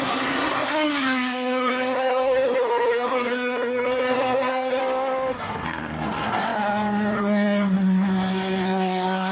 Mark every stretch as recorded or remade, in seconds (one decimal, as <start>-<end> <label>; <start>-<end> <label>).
0.0-4.8 remade; 4.8-5.3 recorded; 5.3-9.3 remade